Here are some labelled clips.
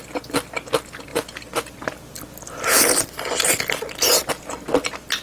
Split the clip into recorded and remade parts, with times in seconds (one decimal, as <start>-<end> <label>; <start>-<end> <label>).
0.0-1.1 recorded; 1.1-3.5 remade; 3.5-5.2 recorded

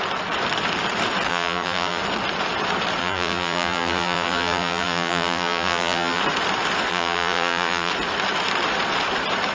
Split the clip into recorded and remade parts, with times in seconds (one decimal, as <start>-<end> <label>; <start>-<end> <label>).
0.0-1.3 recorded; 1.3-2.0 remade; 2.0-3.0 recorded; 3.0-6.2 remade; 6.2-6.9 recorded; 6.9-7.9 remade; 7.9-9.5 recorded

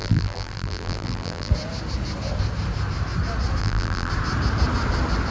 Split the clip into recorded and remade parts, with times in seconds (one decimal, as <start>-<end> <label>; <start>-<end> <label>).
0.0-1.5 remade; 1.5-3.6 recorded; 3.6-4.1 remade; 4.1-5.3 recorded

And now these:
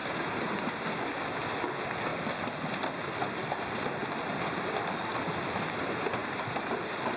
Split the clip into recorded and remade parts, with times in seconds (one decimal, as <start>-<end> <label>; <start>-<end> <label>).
0.0-1.0 remade; 1.0-6.2 recorded; 6.2-7.2 remade

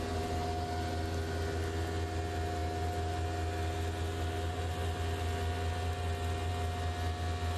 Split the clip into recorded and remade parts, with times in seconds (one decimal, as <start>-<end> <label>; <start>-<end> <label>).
0.0-7.6 recorded

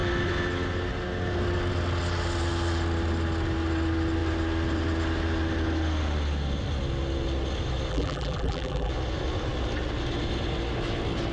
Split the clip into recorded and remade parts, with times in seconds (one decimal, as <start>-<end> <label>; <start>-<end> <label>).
0.0-7.9 recorded; 7.9-8.9 remade; 8.9-11.3 recorded

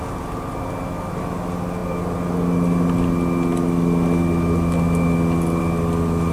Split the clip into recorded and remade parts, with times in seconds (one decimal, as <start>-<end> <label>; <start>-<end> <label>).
0.0-6.3 recorded

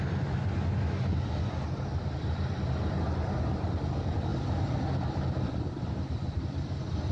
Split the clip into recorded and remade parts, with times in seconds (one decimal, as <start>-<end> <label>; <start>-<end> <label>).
0.0-7.1 remade